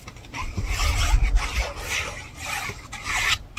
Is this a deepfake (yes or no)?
no